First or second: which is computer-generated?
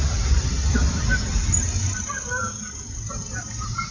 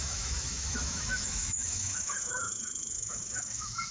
second